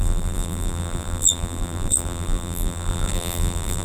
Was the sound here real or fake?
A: fake